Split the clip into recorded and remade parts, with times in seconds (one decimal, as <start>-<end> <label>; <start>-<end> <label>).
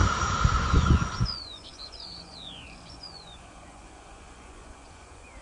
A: 0.0-0.5 recorded; 0.5-5.4 remade